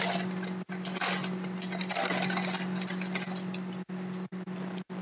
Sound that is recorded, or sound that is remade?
recorded